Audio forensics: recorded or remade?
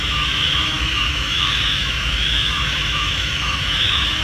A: remade